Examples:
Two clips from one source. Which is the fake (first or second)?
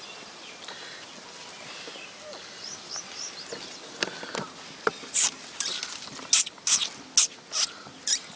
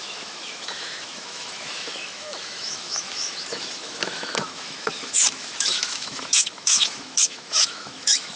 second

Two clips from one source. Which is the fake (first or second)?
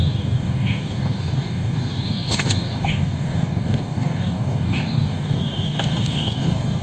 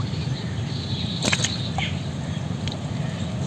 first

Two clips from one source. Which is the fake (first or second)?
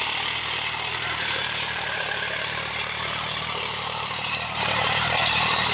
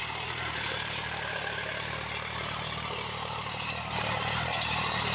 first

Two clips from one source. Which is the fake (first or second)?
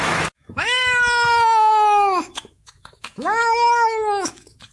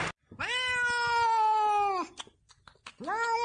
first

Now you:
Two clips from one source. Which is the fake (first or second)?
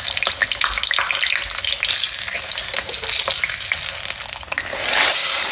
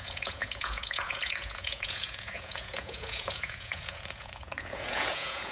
second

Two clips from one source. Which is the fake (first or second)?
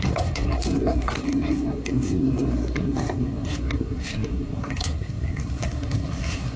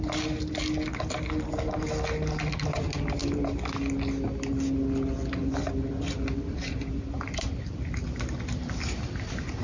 first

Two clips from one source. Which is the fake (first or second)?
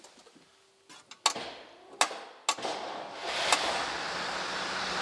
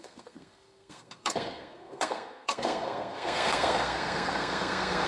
second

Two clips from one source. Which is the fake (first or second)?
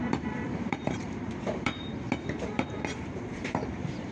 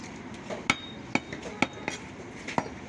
first